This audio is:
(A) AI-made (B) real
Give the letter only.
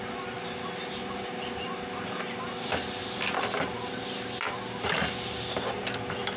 B